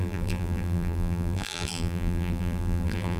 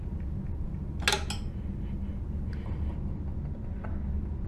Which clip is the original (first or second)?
second